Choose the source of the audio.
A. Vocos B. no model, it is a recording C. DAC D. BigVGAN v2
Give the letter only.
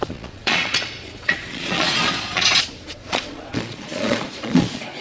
A